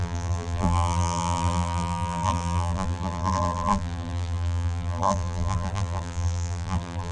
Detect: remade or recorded remade